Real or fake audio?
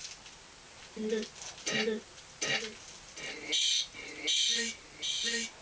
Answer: real